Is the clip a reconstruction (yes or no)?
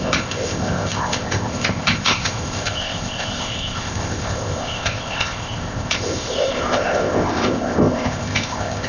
yes